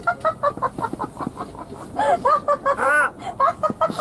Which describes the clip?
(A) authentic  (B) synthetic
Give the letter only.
A